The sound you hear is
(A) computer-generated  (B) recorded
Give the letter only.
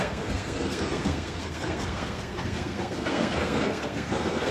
A